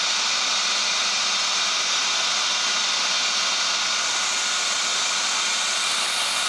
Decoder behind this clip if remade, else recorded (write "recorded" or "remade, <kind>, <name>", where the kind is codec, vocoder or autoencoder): recorded